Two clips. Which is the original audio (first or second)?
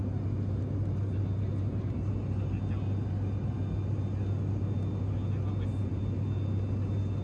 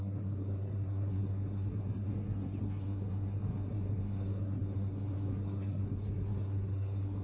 first